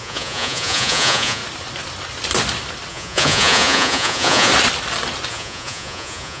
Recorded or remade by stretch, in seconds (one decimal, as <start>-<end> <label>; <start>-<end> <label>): 0.0-1.4 remade; 1.4-2.9 recorded; 2.9-4.5 remade; 4.5-5.3 recorded; 5.3-6.4 remade